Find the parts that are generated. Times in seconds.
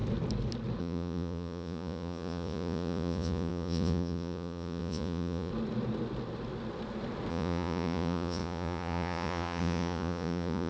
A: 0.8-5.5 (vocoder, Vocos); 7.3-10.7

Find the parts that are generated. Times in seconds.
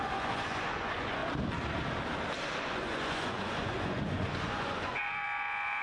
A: 0.0-1.2 (vocoder, Vocos); 2.6-5.8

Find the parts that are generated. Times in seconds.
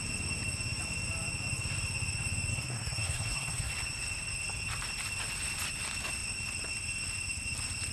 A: 2.5-3.7 (codec, SNAC)